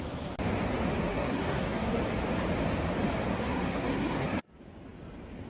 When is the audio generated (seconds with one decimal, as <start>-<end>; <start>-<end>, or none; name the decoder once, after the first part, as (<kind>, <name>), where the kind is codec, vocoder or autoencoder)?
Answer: 1.1-2.0 (codec, SNAC); 3.3-4.4